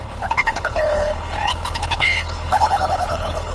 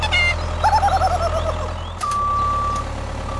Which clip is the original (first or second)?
second